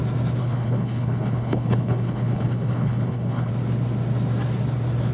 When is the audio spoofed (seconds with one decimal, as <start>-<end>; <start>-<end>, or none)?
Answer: 0.4-3.5